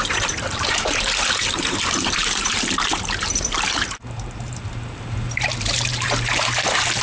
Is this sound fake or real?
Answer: fake